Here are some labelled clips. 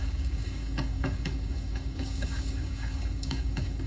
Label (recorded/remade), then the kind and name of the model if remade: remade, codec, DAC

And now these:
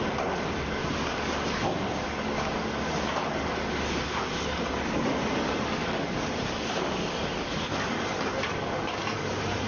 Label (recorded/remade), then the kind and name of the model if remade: remade, codec, DAC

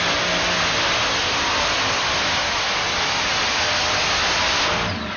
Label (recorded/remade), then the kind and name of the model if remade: recorded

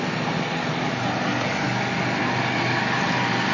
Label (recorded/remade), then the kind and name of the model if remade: recorded